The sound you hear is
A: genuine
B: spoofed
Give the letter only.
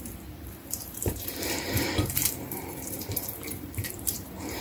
B